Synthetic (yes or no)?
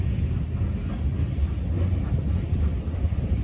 no